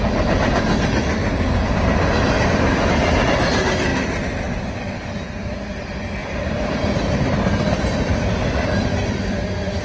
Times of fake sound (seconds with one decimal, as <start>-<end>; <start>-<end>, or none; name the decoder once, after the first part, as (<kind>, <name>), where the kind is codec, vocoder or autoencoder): 1.2-1.7 (vocoder, BigVGAN v2); 3.9-4.7; 6.2-7.1